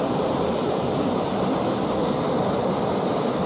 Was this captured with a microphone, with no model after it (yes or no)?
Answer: no